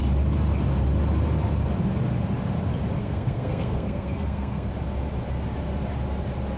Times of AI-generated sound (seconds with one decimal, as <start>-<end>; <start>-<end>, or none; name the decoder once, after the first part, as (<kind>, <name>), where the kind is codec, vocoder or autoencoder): 3.0-4.7 (codec, SNAC)